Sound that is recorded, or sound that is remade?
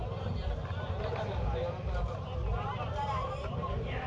remade